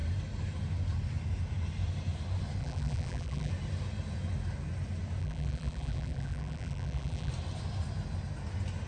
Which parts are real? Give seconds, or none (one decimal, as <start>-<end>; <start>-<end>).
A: 0.0-2.6; 3.5-5.2; 7.3-8.9